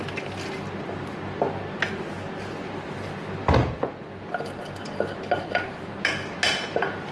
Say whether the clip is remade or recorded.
recorded